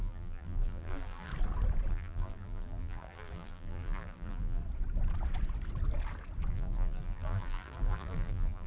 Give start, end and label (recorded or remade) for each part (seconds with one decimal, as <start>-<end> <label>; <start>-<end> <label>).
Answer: 0.0-1.3 remade; 1.3-1.9 recorded; 1.9-4.6 remade; 4.6-6.5 recorded; 6.5-8.7 remade

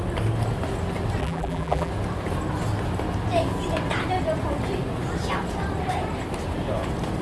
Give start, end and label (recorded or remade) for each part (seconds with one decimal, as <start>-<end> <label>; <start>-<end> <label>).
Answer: 0.0-1.2 recorded; 1.2-1.9 remade; 1.9-7.2 recorded

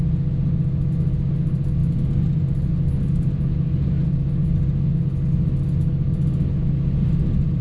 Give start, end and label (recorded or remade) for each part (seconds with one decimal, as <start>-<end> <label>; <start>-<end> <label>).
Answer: 0.0-1.8 recorded; 1.8-2.7 remade; 2.7-5.9 recorded; 5.9-6.4 remade; 6.4-7.6 recorded

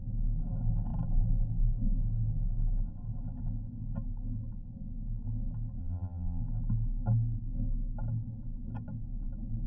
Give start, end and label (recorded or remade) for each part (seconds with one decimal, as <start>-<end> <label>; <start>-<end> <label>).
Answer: 0.0-5.8 recorded; 5.8-6.4 remade; 6.4-9.7 recorded

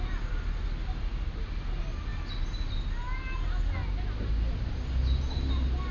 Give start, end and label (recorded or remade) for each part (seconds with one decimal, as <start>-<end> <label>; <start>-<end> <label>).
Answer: 0.0-5.9 recorded

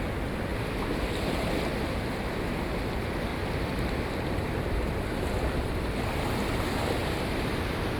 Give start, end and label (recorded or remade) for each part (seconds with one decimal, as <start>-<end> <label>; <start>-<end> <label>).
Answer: 0.0-3.3 recorded; 3.3-6.0 remade; 6.0-8.0 recorded

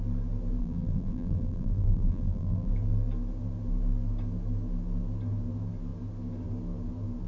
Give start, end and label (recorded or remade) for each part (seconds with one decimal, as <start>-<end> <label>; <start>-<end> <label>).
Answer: 0.0-0.6 recorded; 0.6-2.7 remade; 2.7-7.3 recorded

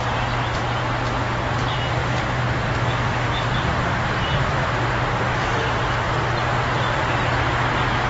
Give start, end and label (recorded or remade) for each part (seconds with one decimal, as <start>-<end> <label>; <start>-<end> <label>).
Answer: 0.0-2.0 recorded; 2.0-2.7 remade; 2.7-3.7 recorded; 3.7-4.9 remade; 4.9-8.1 recorded